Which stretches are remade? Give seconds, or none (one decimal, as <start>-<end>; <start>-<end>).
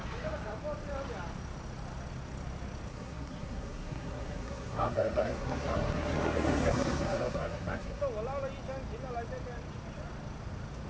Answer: 2.9-8.0